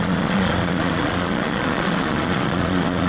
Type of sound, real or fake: fake